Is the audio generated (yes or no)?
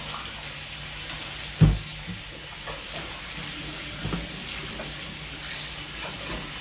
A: no